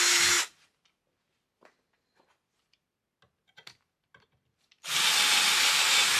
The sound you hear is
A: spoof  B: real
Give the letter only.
B